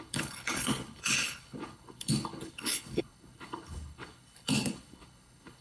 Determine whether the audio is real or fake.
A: fake